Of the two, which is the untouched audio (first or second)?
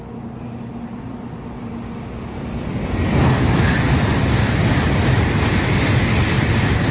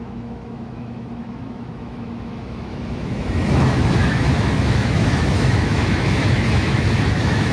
first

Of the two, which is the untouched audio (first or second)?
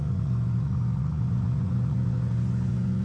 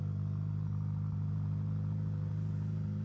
second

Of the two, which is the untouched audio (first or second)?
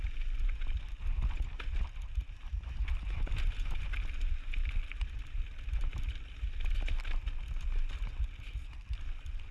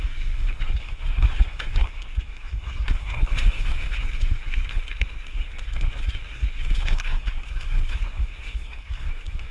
first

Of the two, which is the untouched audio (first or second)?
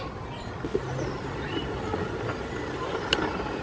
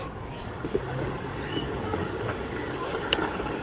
first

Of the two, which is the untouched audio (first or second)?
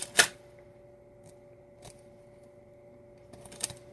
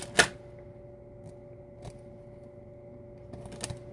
second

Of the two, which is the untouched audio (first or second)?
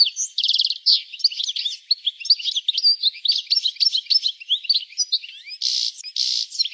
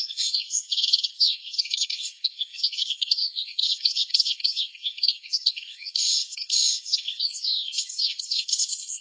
first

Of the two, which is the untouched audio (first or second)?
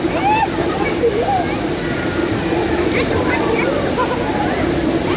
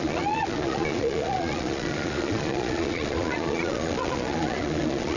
first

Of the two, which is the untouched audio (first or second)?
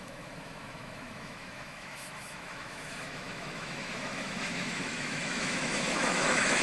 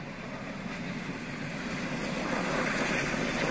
second